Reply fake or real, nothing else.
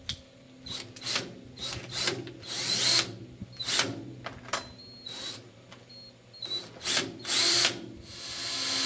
real